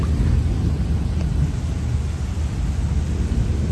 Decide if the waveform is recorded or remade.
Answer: recorded